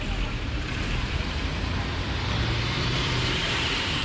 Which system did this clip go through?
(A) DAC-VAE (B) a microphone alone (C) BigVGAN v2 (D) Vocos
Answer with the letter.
C